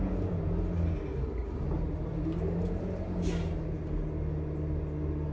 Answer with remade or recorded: recorded